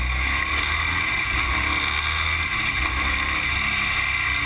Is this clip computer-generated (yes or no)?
no